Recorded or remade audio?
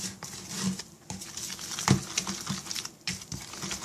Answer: recorded